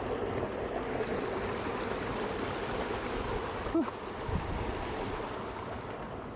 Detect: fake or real real